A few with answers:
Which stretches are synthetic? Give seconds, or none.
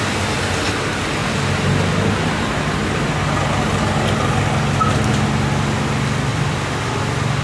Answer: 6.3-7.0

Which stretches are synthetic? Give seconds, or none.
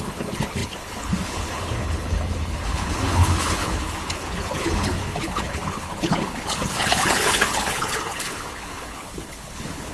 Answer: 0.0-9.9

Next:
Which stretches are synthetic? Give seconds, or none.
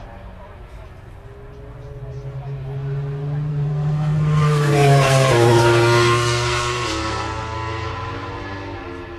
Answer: 3.5-7.9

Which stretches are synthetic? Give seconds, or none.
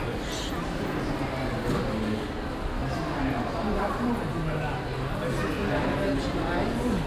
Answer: none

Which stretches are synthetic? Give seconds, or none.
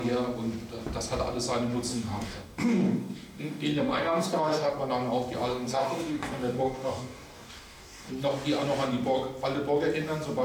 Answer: 1.9-4.7; 5.5-8.1